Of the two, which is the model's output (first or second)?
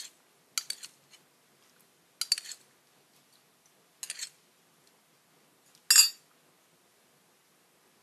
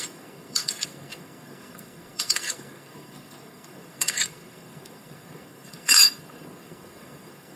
second